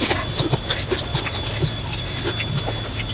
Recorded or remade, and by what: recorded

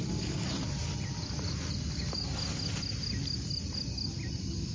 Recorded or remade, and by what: recorded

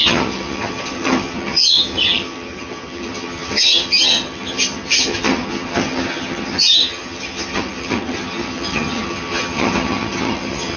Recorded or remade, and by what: remade, vocoder, HiFi-GAN